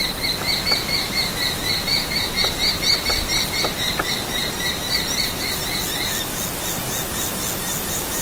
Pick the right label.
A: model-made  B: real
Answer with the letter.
B